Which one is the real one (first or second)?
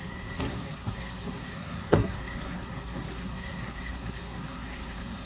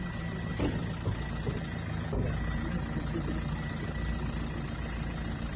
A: second